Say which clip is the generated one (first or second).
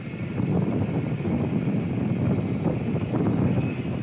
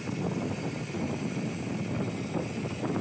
first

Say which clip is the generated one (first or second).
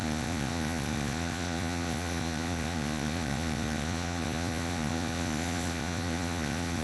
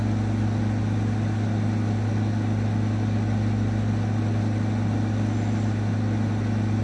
first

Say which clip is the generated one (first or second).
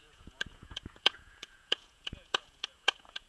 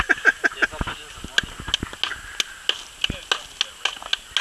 first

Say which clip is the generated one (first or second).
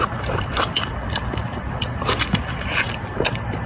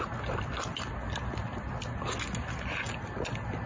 first